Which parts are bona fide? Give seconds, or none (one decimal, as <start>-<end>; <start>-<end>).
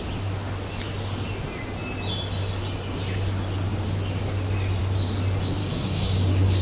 0.0-5.6